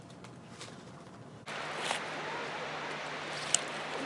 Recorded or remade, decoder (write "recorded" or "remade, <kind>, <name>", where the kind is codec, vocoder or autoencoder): recorded